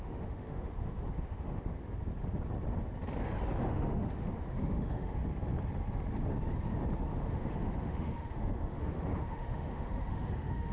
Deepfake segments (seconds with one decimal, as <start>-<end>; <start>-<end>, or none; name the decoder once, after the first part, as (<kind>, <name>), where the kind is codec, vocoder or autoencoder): 0.0-1.8 (autoencoder, DAC-VAE); 3.6-5.2; 7.1-10.7